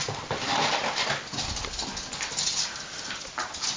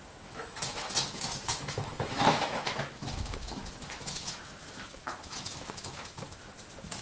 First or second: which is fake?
second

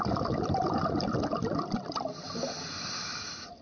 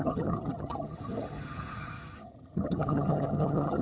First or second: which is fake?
second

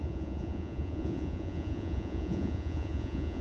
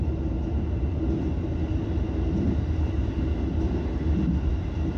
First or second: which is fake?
first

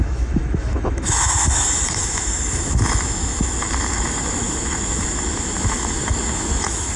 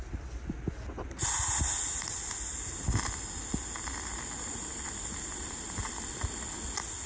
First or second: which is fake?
first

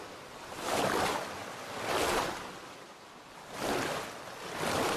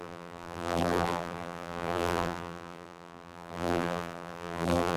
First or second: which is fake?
second